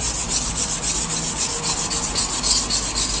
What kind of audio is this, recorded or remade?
recorded